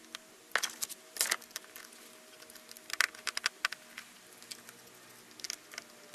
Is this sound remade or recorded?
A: recorded